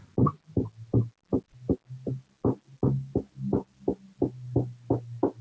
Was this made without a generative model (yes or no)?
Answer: yes